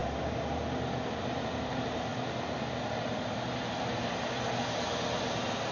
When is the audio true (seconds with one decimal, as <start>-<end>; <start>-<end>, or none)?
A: 0.0-1.2; 2.1-5.7

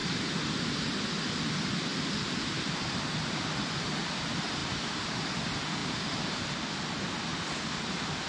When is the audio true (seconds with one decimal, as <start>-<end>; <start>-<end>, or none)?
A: 0.0-4.6; 5.3-8.3